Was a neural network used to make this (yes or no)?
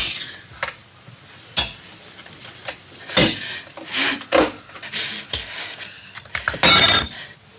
no